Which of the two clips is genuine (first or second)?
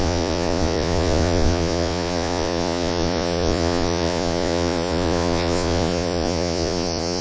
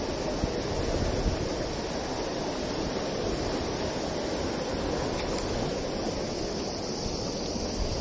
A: second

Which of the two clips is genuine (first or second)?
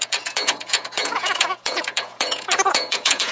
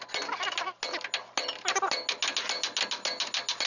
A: second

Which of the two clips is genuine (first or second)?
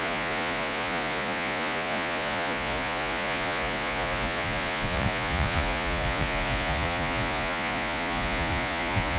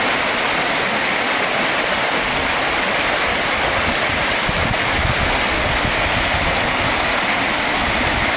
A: second